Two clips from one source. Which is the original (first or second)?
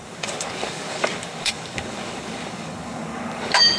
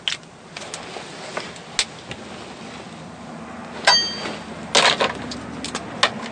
second